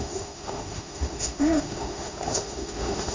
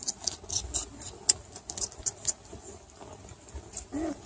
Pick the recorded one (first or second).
second